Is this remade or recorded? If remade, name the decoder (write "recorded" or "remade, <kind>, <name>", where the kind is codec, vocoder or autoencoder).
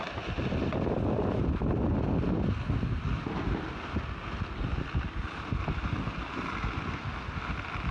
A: recorded